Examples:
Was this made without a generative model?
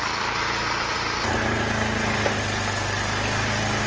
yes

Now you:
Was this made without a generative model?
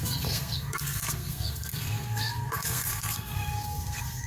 no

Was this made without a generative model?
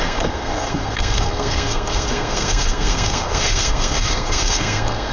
no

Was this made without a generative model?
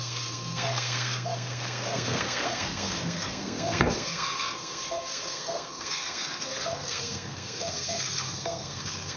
no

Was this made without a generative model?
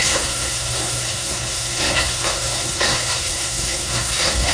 no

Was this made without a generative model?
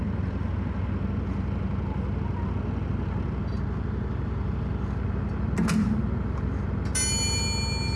yes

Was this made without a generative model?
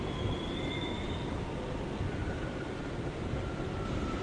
yes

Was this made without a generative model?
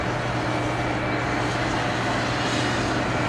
yes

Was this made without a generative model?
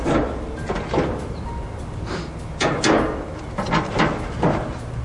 yes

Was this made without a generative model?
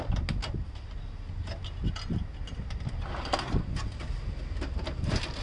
yes